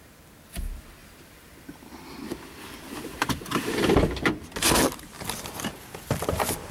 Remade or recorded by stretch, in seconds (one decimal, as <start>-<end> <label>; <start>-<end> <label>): 0.0-1.0 recorded; 1.0-4.0 remade; 4.0-6.7 recorded